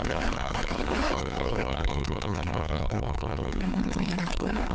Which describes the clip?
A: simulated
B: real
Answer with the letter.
A